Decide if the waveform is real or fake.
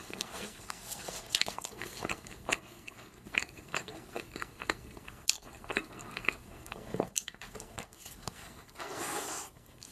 fake